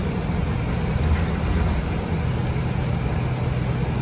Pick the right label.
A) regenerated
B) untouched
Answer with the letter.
B